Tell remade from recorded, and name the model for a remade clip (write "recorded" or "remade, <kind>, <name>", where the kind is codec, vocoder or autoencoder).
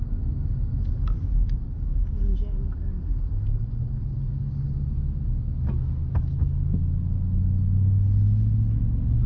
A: recorded